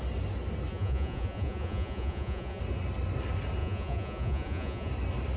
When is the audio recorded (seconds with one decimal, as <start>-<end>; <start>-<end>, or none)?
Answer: 0.0-0.7; 2.6-3.6; 4.9-5.4